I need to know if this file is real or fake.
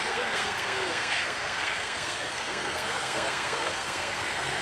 fake